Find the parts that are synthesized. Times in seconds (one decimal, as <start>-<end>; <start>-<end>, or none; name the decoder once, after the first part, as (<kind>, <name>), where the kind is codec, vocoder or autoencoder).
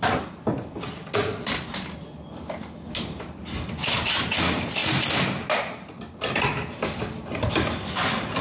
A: none